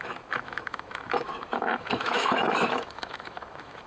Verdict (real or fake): fake